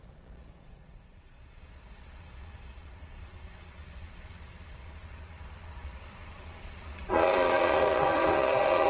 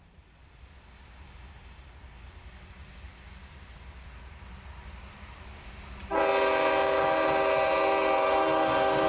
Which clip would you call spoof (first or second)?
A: first